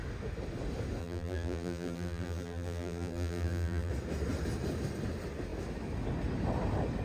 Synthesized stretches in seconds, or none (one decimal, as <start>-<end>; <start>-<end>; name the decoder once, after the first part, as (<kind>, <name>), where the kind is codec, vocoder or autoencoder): 1.0-3.9 (vocoder, BigVGAN v2)